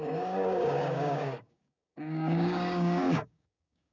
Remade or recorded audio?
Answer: remade